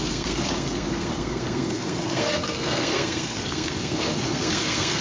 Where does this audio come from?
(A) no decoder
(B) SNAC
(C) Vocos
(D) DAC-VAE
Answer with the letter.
B